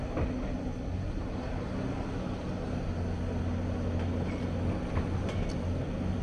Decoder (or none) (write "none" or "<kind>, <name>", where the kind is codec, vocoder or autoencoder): none